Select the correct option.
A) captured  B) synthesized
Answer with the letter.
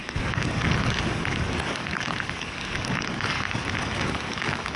B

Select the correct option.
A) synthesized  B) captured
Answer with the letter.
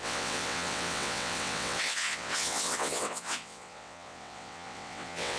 A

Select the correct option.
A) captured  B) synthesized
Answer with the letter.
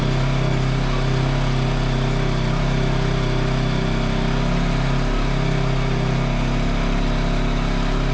A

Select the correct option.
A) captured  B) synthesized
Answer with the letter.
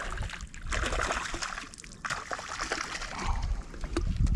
A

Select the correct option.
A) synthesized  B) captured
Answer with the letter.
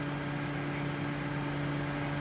B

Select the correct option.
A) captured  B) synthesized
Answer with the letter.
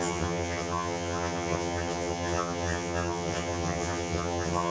B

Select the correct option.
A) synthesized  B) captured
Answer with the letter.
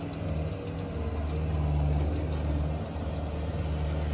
B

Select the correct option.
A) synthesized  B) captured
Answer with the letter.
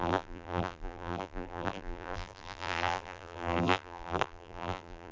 A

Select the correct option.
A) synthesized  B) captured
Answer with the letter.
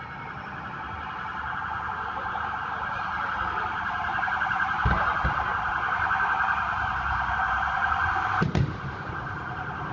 A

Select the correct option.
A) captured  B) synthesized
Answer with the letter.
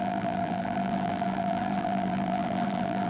B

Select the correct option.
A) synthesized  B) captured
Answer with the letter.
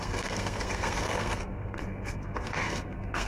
A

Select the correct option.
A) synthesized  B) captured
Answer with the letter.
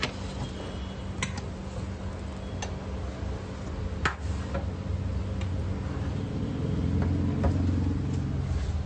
B